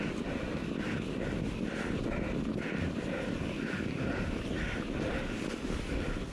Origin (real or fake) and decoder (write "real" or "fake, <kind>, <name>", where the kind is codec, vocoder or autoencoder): real